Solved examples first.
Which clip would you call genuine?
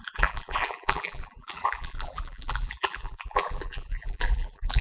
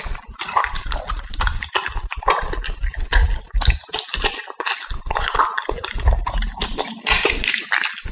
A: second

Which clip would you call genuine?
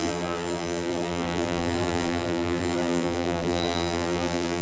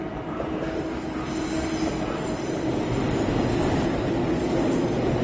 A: second